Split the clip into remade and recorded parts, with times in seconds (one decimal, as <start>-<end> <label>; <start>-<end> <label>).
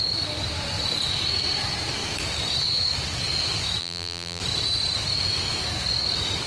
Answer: 0.0-3.8 recorded; 3.8-4.4 remade; 4.4-6.5 recorded